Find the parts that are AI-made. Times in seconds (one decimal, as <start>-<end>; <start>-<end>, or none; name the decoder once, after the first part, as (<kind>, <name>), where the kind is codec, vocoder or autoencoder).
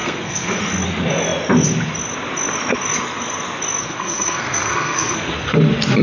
0.0-0.6 (codec, SNAC); 3.8-5.3